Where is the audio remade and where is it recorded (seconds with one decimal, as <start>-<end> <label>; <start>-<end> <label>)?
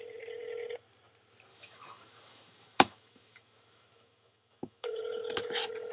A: 0.0-1.5 recorded; 1.5-5.0 remade; 5.0-5.9 recorded